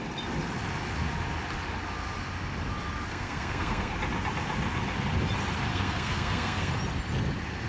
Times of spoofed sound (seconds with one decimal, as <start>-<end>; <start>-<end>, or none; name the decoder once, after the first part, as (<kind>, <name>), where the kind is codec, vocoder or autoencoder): 3.1-3.9 (codec, SNAC); 5.7-6.7